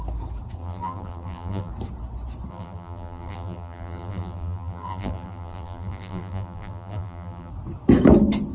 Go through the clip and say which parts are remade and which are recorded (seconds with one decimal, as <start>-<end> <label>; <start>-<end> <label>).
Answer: 0.0-0.6 recorded; 0.6-1.7 remade; 1.7-2.5 recorded; 2.5-7.5 remade; 7.5-8.5 recorded